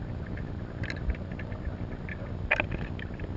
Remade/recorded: recorded